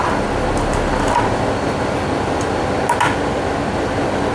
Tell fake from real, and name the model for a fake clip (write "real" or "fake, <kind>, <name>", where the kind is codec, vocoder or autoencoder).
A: real